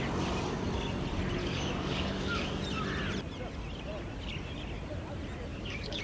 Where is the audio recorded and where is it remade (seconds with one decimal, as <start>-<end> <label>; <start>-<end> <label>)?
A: 0.0-1.4 recorded; 1.4-2.6 remade; 2.6-5.5 recorded; 5.5-6.0 remade